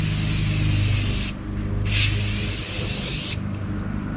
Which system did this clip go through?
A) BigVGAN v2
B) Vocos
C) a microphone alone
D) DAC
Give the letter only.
C